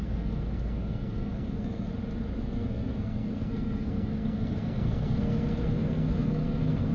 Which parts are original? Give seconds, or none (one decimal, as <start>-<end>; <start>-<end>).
1.9-2.4